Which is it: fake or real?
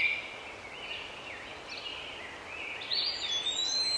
real